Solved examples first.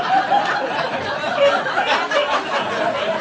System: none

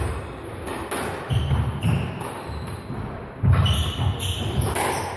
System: none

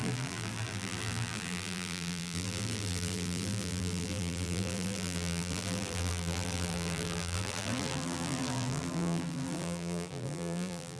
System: vocoder, BigVGAN v2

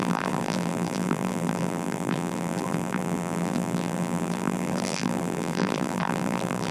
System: vocoder, BigVGAN v2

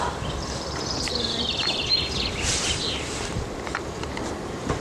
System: vocoder, BigVGAN v2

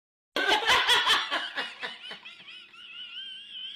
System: none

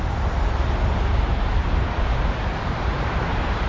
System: vocoder, BigVGAN v2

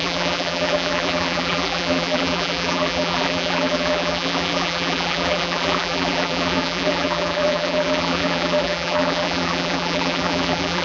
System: vocoder, BigVGAN v2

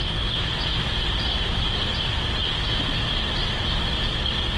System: none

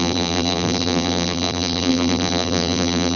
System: vocoder, BigVGAN v2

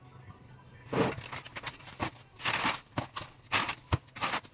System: none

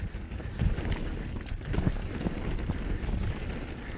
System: none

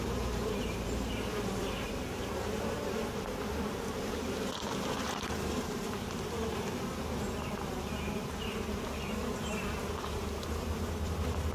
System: vocoder, BigVGAN v2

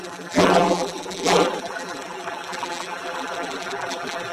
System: vocoder, BigVGAN v2